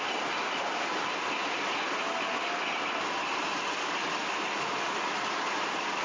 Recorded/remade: recorded